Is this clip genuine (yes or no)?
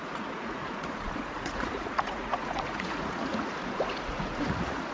no